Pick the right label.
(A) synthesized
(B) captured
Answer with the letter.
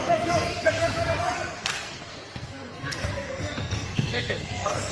A